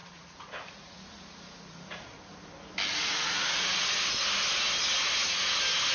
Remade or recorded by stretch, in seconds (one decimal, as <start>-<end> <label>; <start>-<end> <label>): 0.0-2.2 remade; 2.2-2.9 recorded; 2.9-3.9 remade; 3.9-5.9 recorded

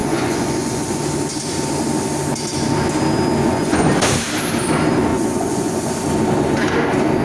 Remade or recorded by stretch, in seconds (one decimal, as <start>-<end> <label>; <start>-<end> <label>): 0.0-1.0 remade; 1.0-3.4 recorded; 3.4-3.9 remade; 3.9-5.1 recorded; 5.1-5.9 remade; 5.9-7.2 recorded

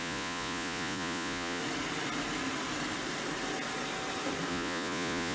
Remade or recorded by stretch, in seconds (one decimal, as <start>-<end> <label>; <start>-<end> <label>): 0.0-1.6 remade; 1.6-4.5 recorded; 4.5-5.3 remade

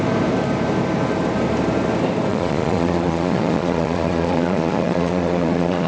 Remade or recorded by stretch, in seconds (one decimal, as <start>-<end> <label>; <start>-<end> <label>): 0.0-2.3 recorded; 2.3-5.9 remade

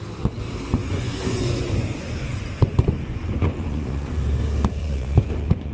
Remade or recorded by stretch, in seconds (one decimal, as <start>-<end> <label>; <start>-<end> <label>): 0.0-0.8 recorded; 0.8-4.2 remade; 4.2-4.8 recorded; 4.8-5.7 remade

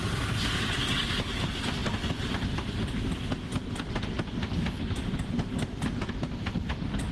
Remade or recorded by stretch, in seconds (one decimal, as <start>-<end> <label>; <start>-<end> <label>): 0.0-7.1 recorded

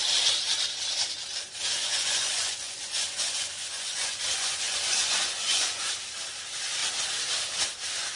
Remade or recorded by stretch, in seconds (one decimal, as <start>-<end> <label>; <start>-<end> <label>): 0.0-1.7 recorded; 1.7-5.9 remade; 5.9-8.2 recorded